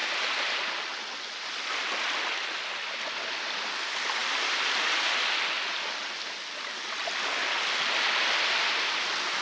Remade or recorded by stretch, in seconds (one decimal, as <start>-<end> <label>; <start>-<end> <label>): 0.0-9.4 recorded